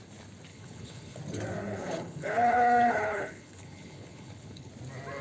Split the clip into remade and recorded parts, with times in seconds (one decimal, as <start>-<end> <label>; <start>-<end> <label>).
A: 0.0-0.5 recorded; 0.5-1.2 remade; 1.2-1.6 recorded; 1.6-4.7 remade; 4.7-5.2 recorded